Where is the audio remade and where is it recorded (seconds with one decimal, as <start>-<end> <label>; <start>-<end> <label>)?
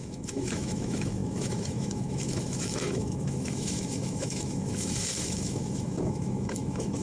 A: 0.0-7.0 remade